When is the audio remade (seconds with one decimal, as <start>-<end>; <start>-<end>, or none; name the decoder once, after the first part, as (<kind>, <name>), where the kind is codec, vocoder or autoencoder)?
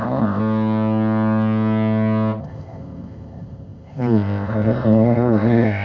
0.0-0.4 (codec, ZipCodec); 2.4-5.8